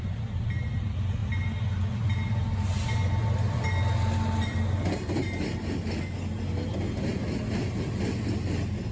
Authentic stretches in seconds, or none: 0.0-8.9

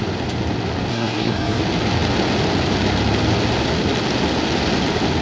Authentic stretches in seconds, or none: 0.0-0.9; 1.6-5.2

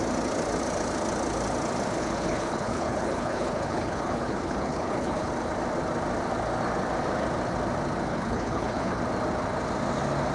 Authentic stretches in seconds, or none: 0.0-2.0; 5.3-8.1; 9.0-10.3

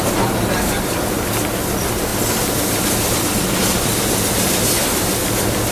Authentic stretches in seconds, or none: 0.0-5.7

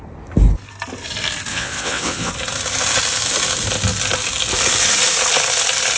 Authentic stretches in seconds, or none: 0.0-1.5; 2.3-6.0

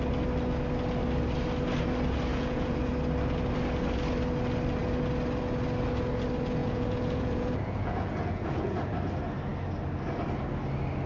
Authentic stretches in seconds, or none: 0.0-2.3; 2.9-6.6; 8.9-11.1

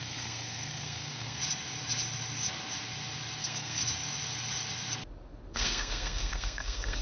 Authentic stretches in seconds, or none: 1.4-3.4; 3.8-5.5